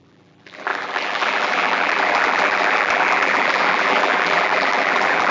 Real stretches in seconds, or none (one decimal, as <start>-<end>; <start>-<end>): none